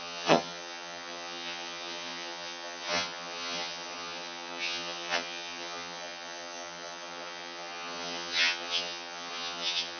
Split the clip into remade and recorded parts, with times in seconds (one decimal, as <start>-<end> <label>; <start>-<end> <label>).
0.0-10.0 remade